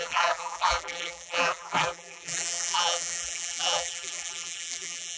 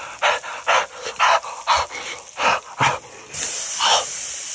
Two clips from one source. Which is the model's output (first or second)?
first